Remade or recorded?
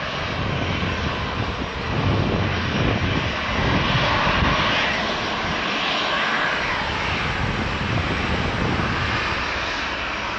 recorded